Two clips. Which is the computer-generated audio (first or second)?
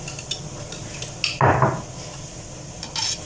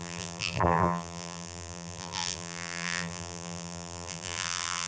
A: second